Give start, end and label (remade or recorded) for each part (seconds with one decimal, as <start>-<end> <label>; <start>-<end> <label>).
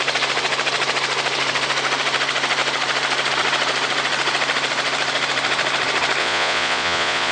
0.0-6.2 recorded; 6.2-7.3 remade